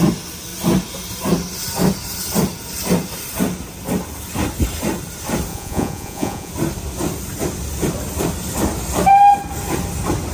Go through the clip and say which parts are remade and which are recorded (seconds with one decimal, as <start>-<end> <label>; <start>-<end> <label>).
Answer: 0.0-5.5 recorded; 5.5-6.5 remade; 6.5-10.3 recorded

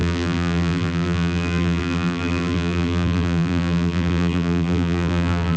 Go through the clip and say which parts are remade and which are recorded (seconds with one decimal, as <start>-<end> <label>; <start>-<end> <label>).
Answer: 0.0-5.6 remade

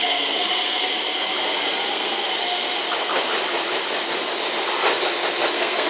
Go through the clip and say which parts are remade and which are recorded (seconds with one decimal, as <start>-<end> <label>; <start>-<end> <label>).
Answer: 0.0-0.9 remade; 0.9-1.9 recorded; 1.9-2.3 remade; 2.3-5.5 recorded; 5.5-5.9 remade

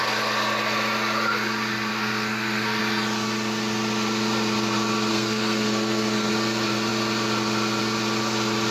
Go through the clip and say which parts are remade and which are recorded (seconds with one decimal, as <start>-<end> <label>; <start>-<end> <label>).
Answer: 0.0-1.9 recorded; 1.9-2.8 remade; 2.8-5.1 recorded; 5.1-6.3 remade; 6.3-8.7 recorded

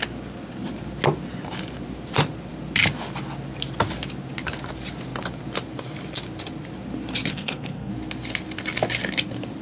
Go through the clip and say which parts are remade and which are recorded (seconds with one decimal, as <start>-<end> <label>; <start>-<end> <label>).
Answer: 0.0-7.3 recorded; 7.3-7.9 remade; 7.9-9.6 recorded